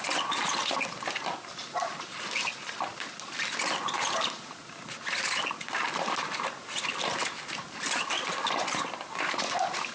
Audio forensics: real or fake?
real